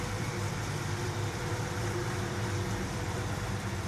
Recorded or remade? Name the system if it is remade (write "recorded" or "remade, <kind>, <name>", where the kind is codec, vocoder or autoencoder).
remade, vocoder, BigVGAN v2